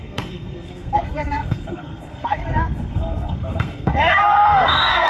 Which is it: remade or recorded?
remade